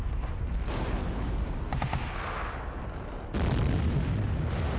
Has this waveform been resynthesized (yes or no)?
no